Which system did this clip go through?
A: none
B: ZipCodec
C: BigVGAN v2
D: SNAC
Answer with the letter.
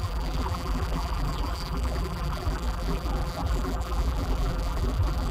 C